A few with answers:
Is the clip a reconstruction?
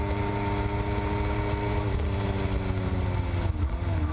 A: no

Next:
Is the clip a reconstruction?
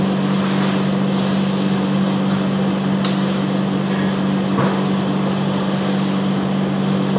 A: no